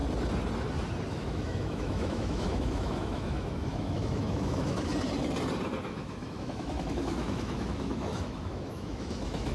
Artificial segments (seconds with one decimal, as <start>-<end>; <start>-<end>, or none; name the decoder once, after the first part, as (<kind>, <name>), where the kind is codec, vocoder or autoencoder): 1.1-4.9 (autoencoder, DAC-VAE); 5.8-9.5